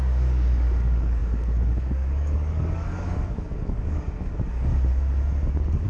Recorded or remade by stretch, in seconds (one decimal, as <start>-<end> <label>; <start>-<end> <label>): 0.0-4.7 remade; 4.7-5.5 recorded; 5.5-5.9 remade

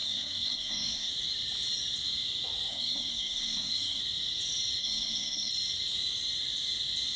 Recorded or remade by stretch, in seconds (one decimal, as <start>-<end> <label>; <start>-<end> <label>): 0.0-1.1 remade; 1.1-2.7 recorded; 2.7-4.0 remade; 4.0-4.8 recorded; 4.8-5.5 remade; 5.5-7.2 recorded